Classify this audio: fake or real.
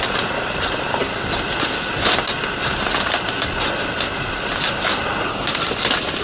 real